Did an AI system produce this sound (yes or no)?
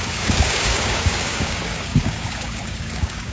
yes